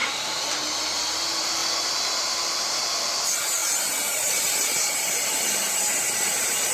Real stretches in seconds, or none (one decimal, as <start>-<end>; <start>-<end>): 1.6-2.2